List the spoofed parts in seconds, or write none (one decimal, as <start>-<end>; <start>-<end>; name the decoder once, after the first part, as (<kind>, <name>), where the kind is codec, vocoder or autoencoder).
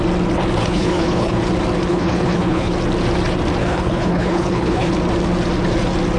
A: 0.6-1.4 (codec, HILCodec); 1.9-2.7; 3.6-4.9